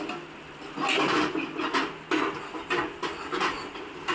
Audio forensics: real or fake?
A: real